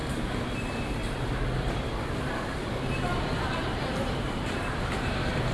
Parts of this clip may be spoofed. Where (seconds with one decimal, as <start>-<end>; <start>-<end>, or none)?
0.5-5.5